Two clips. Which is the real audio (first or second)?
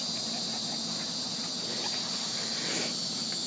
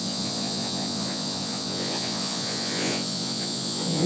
first